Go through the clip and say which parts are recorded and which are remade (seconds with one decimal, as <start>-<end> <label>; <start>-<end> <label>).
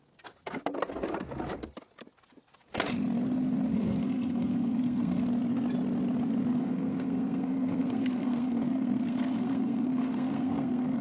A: 0.0-3.7 recorded; 3.7-5.2 remade; 5.2-6.5 recorded; 6.5-11.0 remade